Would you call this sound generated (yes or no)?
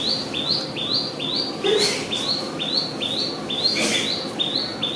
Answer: no